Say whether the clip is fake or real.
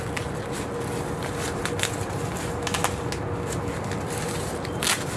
real